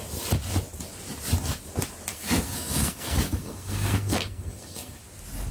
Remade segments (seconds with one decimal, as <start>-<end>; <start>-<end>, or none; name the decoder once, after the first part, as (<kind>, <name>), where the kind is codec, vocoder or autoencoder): 2.1-5.0 (codec, SNAC)